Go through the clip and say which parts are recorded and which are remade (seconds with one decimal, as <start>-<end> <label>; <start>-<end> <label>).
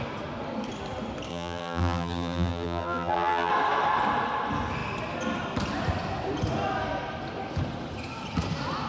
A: 0.0-1.3 recorded; 1.3-3.5 remade; 3.5-8.9 recorded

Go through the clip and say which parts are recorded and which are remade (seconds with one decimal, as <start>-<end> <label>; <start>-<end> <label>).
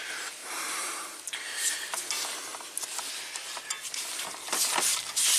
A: 0.0-0.4 recorded; 0.4-2.0 remade; 2.0-5.4 recorded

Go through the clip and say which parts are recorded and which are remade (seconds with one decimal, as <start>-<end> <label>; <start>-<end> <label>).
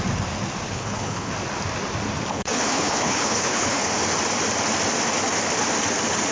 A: 0.0-0.7 recorded; 0.7-1.3 remade; 1.3-2.3 recorded; 2.3-3.9 remade; 3.9-6.3 recorded